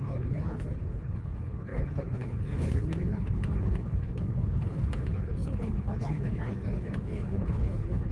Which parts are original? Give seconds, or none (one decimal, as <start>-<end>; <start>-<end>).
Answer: none